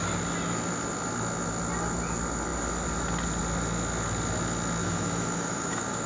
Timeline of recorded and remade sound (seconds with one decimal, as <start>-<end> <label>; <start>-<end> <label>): 0.0-4.8 recorded; 4.8-6.1 remade